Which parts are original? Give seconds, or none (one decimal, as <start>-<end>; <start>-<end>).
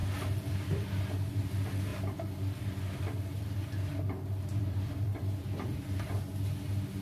1.4-1.9; 6.1-7.0